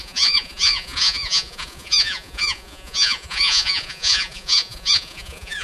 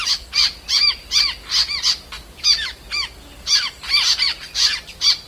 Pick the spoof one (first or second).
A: first